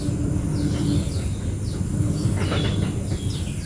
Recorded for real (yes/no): yes